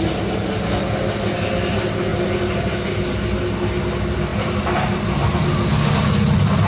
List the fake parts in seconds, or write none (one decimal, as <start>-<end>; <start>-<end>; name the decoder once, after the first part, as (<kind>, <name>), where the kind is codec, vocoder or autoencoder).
none

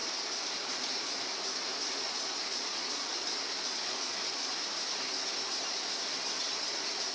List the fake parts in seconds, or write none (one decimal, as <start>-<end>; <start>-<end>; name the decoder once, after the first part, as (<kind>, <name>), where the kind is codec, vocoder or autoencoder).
1.9-4.5 (vocoder, Vocos); 6.4-7.1

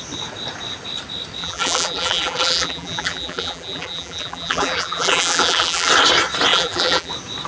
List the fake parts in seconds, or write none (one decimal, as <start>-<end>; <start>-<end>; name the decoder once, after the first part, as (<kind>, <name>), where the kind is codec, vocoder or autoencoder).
1.4-5.9 (vocoder, BigVGAN v2); 6.5-7.1

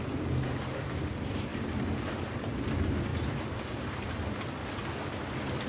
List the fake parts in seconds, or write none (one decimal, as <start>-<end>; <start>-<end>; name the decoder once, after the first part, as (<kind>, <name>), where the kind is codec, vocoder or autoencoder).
1.5-2.3 (vocoder, BigVGAN v2); 3.1-4.3

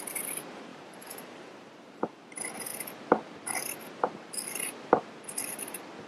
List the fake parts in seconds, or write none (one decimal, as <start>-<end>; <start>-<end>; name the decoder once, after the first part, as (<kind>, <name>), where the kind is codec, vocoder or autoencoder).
0.7-2.2 (vocoder, BigVGAN v2)

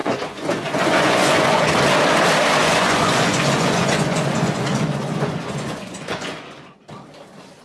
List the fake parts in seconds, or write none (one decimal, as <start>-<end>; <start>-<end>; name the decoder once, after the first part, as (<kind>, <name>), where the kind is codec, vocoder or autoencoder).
0.0-1.7 (vocoder, Vocos); 2.6-6.8

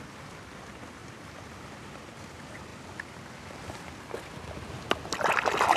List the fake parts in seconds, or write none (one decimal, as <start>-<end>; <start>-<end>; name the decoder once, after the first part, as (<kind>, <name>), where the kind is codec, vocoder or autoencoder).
none

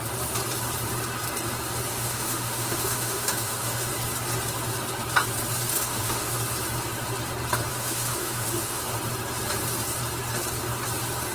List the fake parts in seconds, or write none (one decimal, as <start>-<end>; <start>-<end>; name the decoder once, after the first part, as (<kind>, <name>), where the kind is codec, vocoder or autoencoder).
1.9-3.9 (autoencoder, DAC-VAE); 5.7-6.4; 7.7-8.8